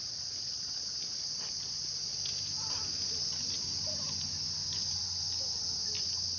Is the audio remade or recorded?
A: recorded